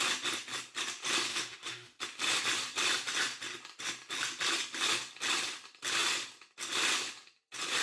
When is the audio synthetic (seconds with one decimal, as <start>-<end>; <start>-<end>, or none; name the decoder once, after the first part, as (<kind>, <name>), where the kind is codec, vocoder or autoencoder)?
1.3-2.0 (autoencoder, DAC-VAE)